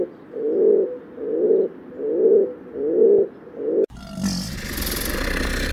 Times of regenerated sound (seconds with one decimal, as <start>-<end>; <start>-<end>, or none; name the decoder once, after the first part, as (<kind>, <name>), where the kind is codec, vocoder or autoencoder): none